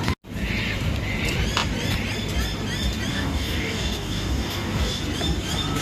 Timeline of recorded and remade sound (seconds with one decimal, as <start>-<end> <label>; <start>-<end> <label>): 0.0-3.1 recorded; 3.1-5.0 remade; 5.0-5.8 recorded